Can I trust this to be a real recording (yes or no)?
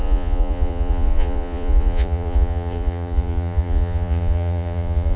no